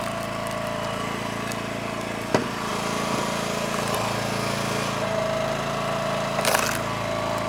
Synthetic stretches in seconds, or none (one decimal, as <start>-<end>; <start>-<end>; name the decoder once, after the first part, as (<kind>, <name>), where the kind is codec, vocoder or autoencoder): none